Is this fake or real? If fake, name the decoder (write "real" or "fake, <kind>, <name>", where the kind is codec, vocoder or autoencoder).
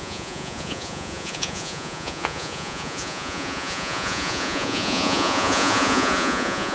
fake, vocoder, Vocos